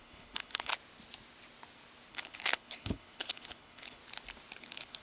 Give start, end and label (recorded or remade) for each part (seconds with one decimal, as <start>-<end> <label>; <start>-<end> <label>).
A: 0.0-0.7 remade; 0.7-2.1 recorded; 2.1-4.0 remade; 4.0-4.6 recorded; 4.6-5.0 remade